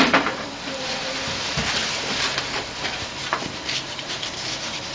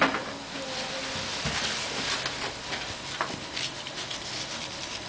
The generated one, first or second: first